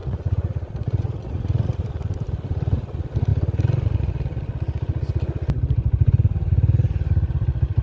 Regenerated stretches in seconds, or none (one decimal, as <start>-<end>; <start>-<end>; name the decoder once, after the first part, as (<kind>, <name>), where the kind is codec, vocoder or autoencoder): 0.0-1.8 (vocoder, Vocos)